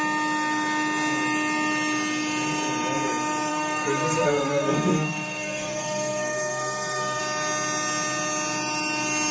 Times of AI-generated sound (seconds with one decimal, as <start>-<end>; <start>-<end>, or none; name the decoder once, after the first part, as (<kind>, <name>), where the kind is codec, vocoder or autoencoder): 3.5-7.2 (codec, SNAC)